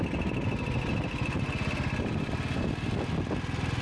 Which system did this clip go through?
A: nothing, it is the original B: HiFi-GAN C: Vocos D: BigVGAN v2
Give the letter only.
A